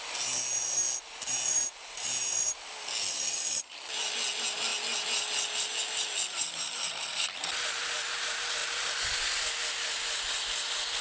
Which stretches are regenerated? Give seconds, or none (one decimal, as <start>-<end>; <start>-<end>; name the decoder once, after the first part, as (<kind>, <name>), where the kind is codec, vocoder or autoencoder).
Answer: none